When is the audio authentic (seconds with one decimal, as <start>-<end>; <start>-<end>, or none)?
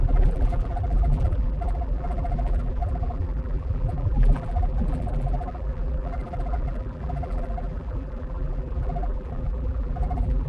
none